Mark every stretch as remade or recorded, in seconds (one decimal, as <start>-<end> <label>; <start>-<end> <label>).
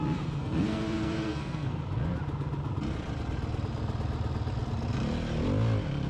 0.0-0.4 recorded; 0.4-1.8 remade; 1.8-6.1 recorded